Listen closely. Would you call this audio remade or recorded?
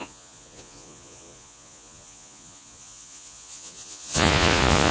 remade